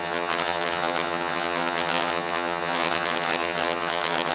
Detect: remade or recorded remade